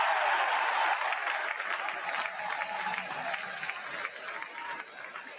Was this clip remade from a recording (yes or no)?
yes